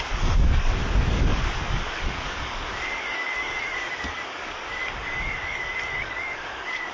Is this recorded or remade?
remade